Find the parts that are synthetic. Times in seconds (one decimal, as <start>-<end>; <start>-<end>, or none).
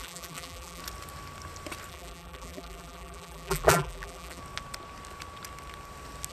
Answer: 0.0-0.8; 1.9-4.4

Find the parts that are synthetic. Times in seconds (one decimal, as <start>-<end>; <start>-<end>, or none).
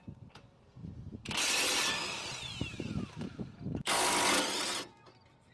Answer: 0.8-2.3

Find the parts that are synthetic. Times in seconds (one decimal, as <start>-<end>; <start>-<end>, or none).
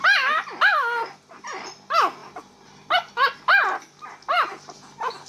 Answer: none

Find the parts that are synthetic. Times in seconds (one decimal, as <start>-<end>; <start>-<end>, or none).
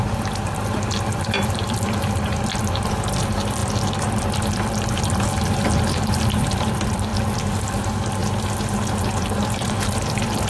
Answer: 0.0-3.6; 4.2-7.1; 7.6-8.2; 9.2-10.5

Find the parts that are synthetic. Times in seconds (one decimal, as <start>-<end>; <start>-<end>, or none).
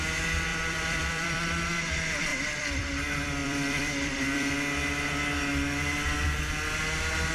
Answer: 0.5-1.7; 2.3-2.9; 3.4-4.5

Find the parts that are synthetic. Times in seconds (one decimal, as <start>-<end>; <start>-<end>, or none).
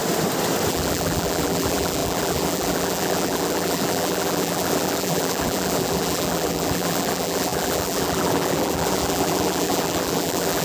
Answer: 0.7-10.6